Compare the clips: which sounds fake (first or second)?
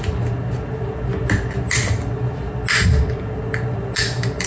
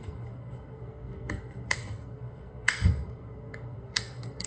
second